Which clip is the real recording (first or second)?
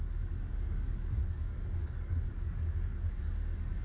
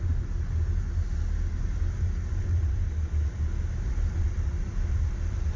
second